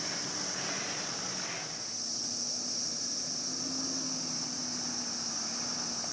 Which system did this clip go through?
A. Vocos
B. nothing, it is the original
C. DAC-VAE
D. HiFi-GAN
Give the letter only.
B